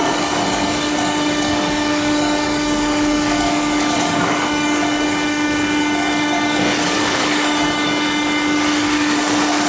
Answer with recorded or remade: remade